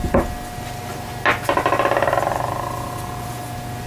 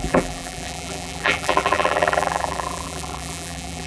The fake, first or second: second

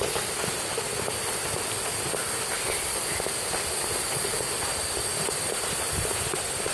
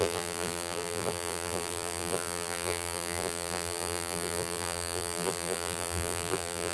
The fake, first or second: second